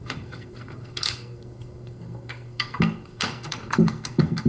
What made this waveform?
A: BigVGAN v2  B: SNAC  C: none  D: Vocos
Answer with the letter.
B